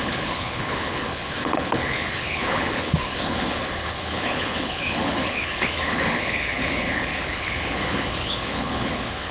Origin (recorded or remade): remade